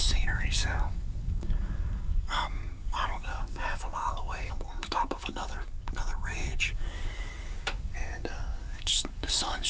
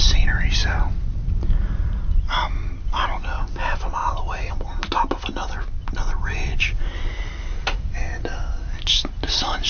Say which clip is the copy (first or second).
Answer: first